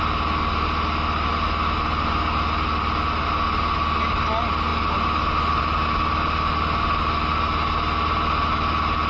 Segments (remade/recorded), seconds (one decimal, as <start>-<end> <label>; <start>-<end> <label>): 0.0-9.1 recorded